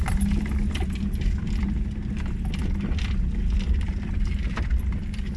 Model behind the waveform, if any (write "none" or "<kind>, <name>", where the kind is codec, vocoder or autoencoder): none